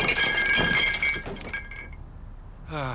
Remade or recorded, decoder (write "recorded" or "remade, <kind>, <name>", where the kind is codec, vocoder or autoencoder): recorded